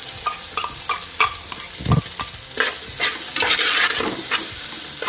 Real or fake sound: real